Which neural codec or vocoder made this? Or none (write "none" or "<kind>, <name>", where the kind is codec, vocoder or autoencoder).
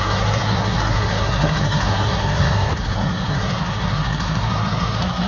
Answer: codec, SNAC